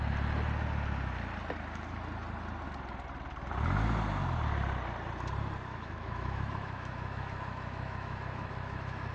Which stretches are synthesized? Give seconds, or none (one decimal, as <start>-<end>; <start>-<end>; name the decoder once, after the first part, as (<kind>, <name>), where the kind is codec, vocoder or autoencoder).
5.7-9.1 (autoencoder, DAC-VAE)